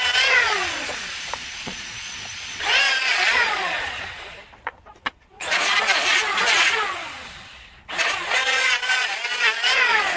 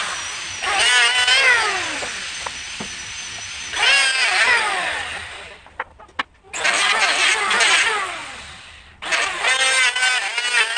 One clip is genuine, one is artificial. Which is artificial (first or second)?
first